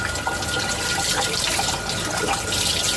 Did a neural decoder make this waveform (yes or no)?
no